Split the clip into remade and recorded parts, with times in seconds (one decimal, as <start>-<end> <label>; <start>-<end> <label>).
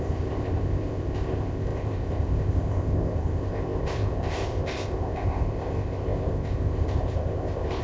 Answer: 0.0-7.8 remade